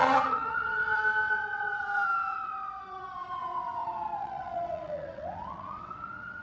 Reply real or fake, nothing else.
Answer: fake